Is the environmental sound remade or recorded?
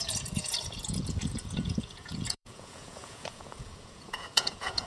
remade